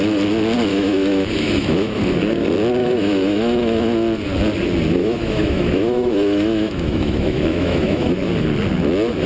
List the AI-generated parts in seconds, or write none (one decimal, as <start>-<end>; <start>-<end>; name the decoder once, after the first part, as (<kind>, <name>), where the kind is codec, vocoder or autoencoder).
0.7-2.0 (autoencoder, DAC-VAE); 2.8-3.8; 5.0-8.1